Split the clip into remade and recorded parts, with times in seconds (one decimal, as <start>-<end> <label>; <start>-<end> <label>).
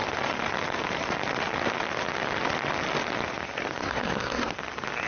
0.0-3.8 recorded; 3.8-4.5 remade; 4.5-5.1 recorded